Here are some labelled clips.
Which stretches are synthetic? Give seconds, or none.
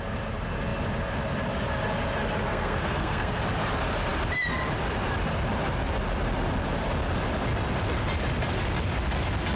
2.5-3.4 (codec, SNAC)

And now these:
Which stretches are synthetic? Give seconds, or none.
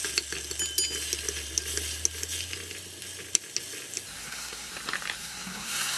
4.2-4.7 (codec, SNAC); 5.2-6.0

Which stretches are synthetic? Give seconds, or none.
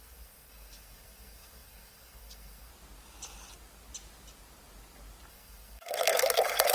0.0-2.7 (codec, SNAC); 5.3-6.7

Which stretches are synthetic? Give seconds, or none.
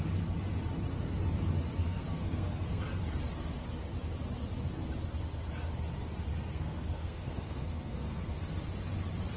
1.8-2.8 (codec, SNAC); 6.3-8.4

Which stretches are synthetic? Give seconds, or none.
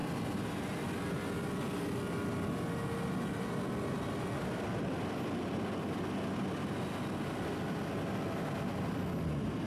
none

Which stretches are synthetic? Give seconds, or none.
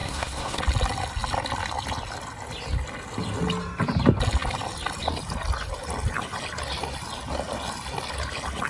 0.0-0.6 (codec, SNAC)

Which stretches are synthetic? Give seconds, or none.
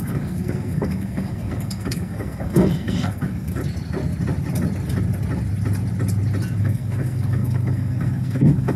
0.0-3.6 (codec, SNAC); 6.6-8.8